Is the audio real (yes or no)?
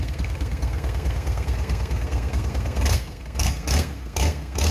no